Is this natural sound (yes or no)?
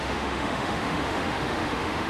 no